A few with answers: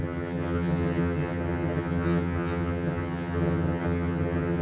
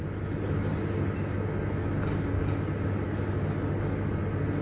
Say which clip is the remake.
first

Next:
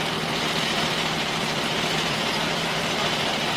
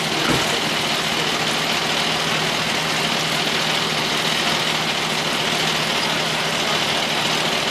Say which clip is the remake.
first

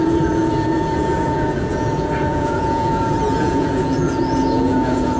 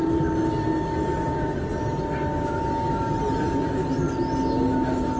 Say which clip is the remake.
first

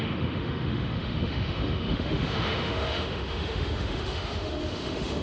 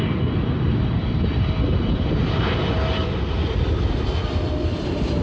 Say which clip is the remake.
first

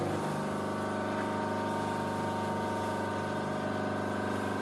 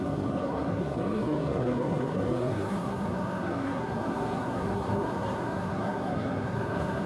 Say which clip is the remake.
second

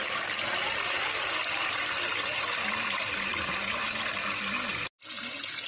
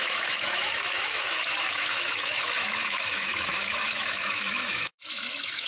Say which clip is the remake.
second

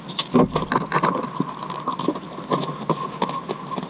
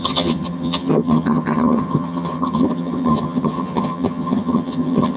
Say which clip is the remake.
second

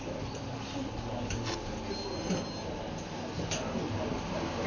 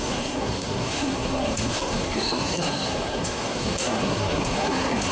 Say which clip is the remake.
second